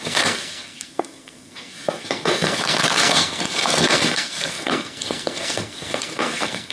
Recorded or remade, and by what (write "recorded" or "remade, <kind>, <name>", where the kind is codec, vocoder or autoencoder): remade, codec, SNAC